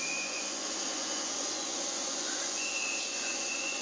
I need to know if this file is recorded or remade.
remade